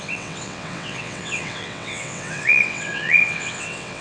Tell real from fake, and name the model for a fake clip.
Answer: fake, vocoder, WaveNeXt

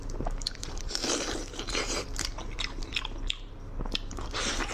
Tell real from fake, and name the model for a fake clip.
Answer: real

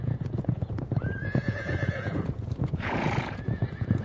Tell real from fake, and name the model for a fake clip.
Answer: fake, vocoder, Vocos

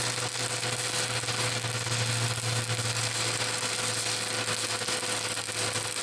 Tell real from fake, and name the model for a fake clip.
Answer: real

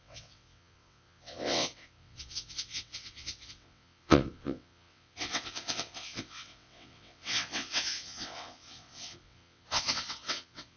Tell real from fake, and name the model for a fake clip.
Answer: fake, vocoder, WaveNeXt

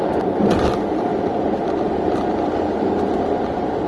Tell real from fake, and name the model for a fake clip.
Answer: real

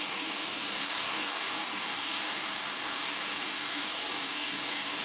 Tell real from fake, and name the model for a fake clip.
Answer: fake, codec, DAC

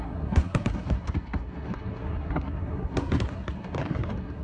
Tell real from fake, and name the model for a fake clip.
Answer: fake, codec, SNAC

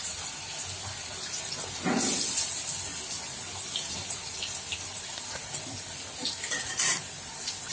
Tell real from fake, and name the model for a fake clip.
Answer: real